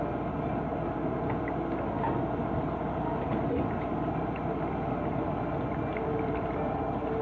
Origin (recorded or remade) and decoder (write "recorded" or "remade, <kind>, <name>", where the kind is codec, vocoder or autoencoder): recorded